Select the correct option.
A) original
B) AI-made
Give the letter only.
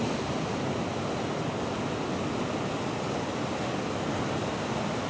A